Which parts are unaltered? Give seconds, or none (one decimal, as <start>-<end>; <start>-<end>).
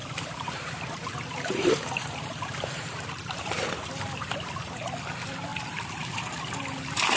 0.5-1.0; 4.3-5.5; 6.1-7.2